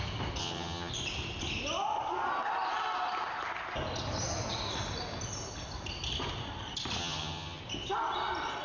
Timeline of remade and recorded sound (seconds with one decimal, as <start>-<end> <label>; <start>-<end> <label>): 0.0-0.4 recorded; 0.4-0.9 remade; 0.9-7.0 recorded; 7.0-7.6 remade; 7.6-8.6 recorded